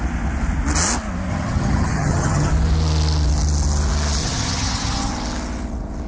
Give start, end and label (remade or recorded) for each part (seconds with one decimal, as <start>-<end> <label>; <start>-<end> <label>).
0.0-1.3 recorded; 1.3-2.5 remade; 2.5-4.2 recorded; 4.2-5.1 remade; 5.1-6.1 recorded